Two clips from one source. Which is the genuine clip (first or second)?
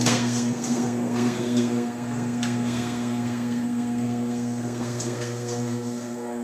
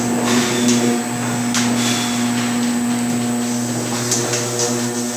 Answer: second